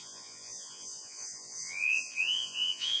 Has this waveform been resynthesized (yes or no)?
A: yes